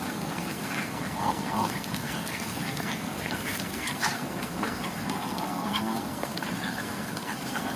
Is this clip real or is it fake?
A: fake